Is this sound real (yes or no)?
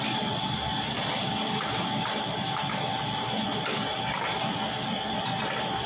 yes